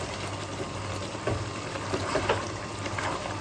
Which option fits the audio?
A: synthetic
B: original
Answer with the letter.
B